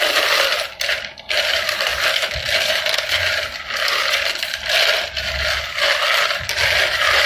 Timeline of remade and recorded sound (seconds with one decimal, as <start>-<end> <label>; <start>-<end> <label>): 0.0-7.3 recorded